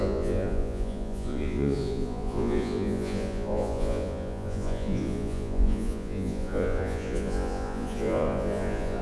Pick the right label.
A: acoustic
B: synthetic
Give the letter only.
B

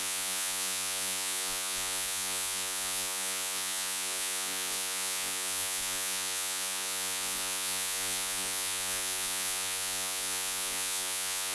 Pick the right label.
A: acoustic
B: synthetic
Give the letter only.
B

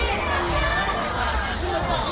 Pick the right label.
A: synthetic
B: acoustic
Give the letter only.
B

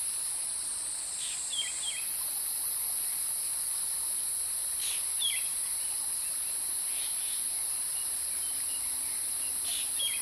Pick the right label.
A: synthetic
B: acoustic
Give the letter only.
B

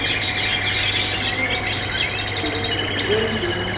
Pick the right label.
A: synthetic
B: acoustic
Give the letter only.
B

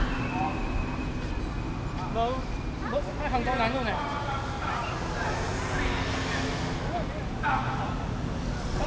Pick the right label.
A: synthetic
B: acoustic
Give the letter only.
B